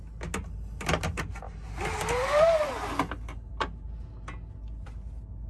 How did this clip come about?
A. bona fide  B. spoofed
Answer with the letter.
A